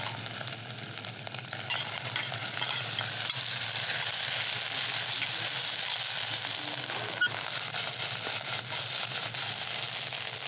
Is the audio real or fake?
real